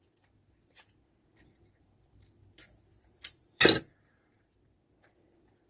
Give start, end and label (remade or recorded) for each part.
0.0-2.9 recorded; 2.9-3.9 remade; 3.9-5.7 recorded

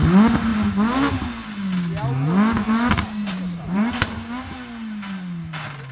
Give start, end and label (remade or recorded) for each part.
0.0-2.6 recorded; 2.6-4.1 remade; 4.1-5.9 recorded

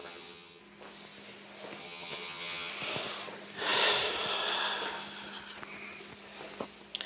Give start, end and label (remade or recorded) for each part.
0.0-0.6 remade; 0.6-1.8 recorded; 1.8-2.7 remade; 2.7-7.1 recorded

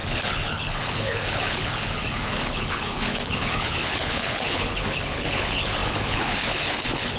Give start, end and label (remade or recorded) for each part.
0.0-7.2 remade